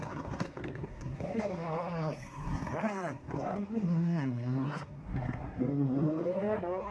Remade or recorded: remade